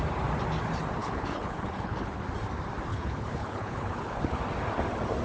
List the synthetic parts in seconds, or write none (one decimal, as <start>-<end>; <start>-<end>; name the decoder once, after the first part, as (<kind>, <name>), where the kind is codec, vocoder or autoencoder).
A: 1.0-2.2 (codec, HILCodec); 2.9-4.4